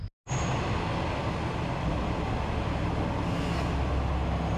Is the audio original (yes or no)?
yes